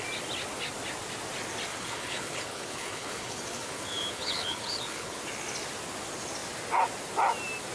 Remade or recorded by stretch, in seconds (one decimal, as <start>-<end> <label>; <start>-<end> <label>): 0.0-1.7 recorded; 1.7-5.2 remade; 5.2-7.7 recorded